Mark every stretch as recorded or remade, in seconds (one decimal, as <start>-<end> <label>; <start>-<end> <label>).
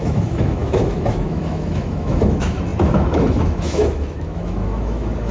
0.0-5.3 remade